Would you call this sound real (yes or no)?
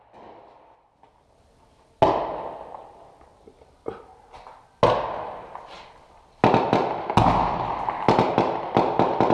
yes